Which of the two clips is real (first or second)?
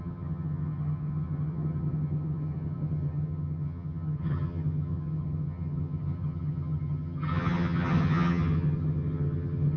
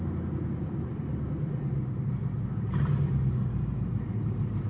second